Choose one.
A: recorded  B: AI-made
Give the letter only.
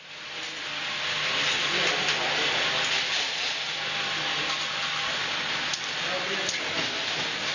A